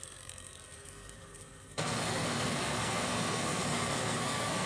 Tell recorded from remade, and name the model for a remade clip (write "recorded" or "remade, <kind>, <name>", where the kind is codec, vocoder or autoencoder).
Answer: remade, codec, SNAC